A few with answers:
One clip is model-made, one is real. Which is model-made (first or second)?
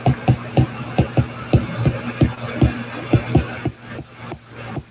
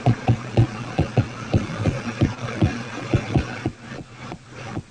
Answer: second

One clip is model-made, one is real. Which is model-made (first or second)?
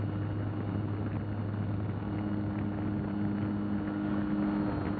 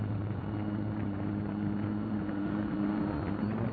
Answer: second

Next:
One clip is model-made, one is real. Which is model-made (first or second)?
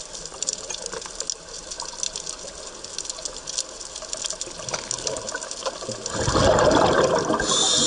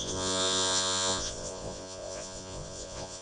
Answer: second